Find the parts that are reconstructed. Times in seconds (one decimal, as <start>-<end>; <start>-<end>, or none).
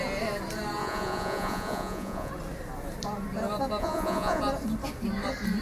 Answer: 0.8-2.3; 3.8-4.4